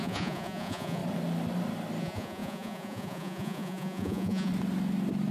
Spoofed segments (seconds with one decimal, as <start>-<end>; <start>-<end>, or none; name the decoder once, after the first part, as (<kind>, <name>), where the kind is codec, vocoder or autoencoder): 0.0-1.0 (vocoder, Vocos); 2.0-4.5